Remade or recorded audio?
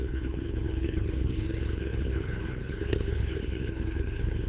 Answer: remade